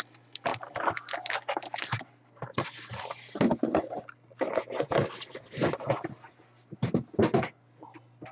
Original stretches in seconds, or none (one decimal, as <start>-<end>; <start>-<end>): 0.0-8.3